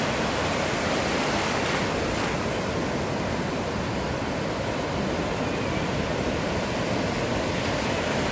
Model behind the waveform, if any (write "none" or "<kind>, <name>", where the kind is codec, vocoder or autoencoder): none